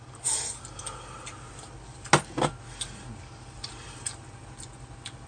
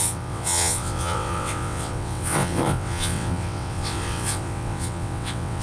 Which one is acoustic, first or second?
first